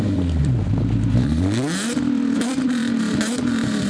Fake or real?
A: fake